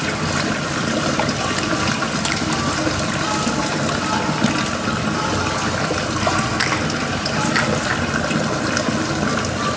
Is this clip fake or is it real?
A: real